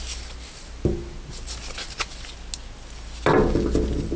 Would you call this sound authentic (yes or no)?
yes